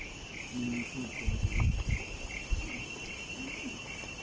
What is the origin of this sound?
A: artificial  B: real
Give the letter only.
B